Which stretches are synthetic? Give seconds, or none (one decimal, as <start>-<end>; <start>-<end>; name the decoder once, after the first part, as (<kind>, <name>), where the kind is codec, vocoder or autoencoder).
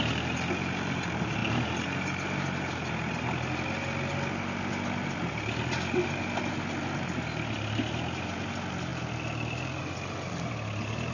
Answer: none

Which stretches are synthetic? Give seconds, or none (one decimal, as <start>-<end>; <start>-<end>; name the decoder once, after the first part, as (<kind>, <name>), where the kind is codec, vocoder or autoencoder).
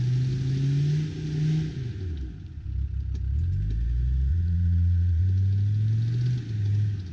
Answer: 4.3-5.2 (vocoder, Vocos)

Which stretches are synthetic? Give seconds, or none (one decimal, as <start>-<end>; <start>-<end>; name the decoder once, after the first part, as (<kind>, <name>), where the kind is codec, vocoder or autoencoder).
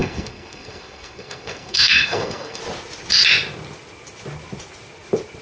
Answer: 0.0-2.6 (codec, SNAC)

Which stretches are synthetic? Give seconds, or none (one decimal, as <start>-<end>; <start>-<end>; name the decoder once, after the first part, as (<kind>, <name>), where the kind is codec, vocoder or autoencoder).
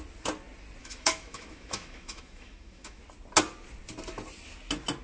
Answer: 0.8-3.0 (autoencoder, DAC-VAE)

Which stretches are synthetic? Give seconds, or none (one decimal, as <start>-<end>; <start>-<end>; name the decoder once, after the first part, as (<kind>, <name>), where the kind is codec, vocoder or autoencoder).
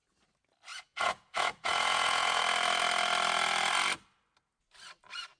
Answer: 0.7-2.4 (vocoder, Vocos)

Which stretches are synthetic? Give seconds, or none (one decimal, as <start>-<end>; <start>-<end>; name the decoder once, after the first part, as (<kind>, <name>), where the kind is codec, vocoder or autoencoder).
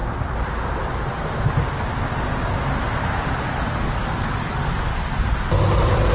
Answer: 3.7-4.9 (codec, DAC)